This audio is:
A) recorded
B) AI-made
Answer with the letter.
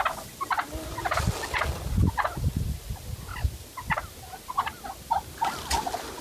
A